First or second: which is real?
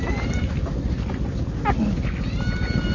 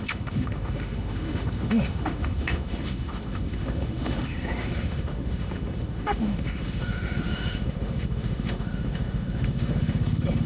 first